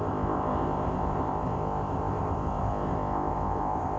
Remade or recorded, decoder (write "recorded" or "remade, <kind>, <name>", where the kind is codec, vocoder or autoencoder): remade, codec, ZipCodec